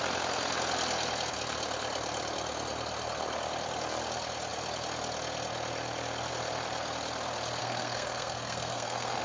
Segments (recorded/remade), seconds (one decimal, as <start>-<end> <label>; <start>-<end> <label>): 0.0-7.6 recorded; 7.6-9.2 remade